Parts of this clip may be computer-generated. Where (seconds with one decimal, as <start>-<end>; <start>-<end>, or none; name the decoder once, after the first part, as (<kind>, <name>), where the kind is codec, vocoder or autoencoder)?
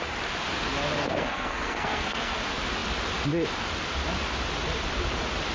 1.0-2.4 (codec, SNAC)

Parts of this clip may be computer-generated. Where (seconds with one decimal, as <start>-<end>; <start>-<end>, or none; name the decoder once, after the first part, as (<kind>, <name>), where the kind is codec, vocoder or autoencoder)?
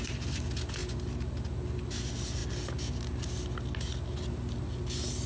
none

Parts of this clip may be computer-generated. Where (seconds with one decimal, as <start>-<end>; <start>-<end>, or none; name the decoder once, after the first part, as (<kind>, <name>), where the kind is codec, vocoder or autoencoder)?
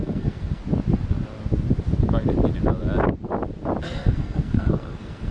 0.0-0.6 (codec, SNAC); 3.8-5.3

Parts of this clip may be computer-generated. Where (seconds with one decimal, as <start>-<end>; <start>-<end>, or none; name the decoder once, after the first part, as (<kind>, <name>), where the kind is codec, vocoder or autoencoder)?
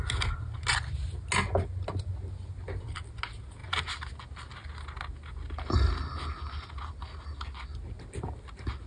none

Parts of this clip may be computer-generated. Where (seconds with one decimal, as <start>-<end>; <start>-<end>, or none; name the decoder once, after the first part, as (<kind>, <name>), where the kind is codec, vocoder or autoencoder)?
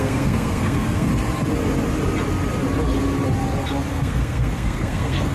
0.0-1.1 (codec, SNAC); 3.9-5.3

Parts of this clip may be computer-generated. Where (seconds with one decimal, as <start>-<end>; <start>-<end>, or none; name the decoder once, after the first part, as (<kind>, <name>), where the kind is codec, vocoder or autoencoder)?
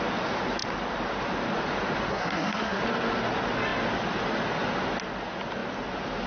2.1-2.8 (codec, SNAC)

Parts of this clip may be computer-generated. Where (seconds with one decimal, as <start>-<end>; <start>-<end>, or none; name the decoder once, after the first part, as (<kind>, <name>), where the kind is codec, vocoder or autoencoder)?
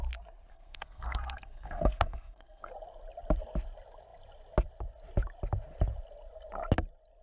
0.5-2.7 (codec, SNAC)